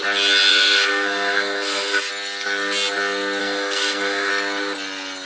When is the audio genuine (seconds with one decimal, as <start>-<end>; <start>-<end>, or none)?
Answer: 0.0-0.5; 2.1-3.4; 4.3-5.3